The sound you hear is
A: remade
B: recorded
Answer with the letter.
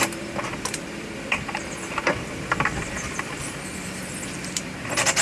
A